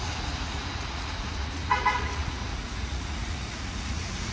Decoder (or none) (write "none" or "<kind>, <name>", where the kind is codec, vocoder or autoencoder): vocoder, Vocos